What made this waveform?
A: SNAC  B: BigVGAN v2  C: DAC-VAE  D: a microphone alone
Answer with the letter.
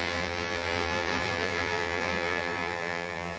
B